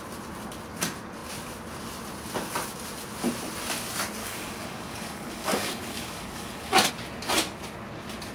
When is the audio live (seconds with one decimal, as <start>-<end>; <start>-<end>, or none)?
0.0-4.2; 6.9-8.3